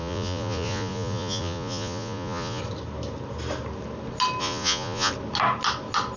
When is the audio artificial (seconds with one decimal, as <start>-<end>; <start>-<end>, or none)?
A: 0.0-2.6; 4.4-5.1